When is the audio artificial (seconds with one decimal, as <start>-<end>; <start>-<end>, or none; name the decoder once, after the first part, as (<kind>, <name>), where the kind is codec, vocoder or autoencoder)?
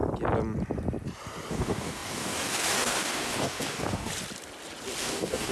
1.5-4.1 (codec, DAC); 5.0-5.5